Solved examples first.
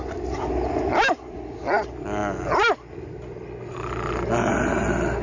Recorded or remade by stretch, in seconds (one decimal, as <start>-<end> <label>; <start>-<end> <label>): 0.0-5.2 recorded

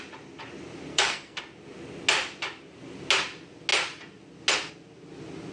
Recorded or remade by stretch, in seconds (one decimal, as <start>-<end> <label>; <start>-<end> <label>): 0.0-0.9 recorded; 0.9-1.4 remade; 1.4-5.5 recorded

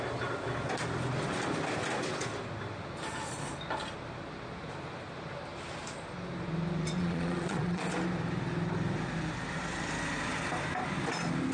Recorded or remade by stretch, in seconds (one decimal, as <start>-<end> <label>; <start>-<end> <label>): 0.0-7.0 recorded; 7.0-7.8 remade; 7.8-11.5 recorded

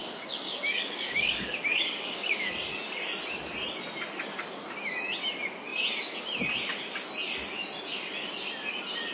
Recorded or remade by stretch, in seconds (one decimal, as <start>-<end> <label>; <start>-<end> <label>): 0.0-2.5 remade; 2.5-9.1 recorded

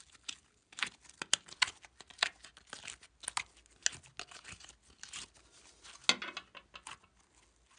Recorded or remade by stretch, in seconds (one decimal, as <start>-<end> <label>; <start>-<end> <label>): 0.0-7.8 recorded

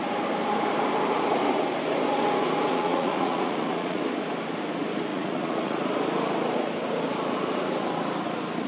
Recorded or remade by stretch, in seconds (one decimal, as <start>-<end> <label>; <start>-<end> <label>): 0.0-2.7 recorded; 2.7-4.0 remade; 4.0-5.1 recorded; 5.1-5.8 remade; 5.8-8.7 recorded

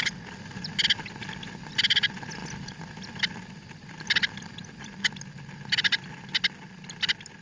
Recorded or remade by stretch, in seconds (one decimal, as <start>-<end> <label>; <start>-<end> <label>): 0.0-2.4 recorded; 2.4-2.9 remade; 2.9-7.4 recorded

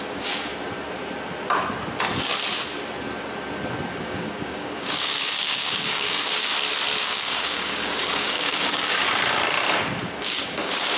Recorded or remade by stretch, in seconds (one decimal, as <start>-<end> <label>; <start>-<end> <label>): 0.0-0.5 remade; 0.5-3.9 recorded; 3.9-6.5 remade; 6.5-7.0 recorded; 7.0-9.0 remade; 9.0-10.2 recorded; 10.2-11.0 remade